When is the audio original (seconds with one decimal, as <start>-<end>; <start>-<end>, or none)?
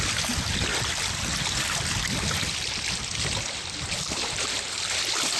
0.0-5.4